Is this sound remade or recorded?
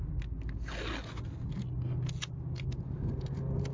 recorded